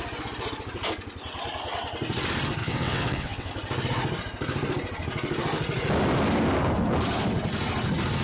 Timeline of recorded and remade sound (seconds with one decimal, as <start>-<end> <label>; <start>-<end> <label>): 0.0-2.6 recorded; 2.6-3.5 remade; 3.5-8.2 recorded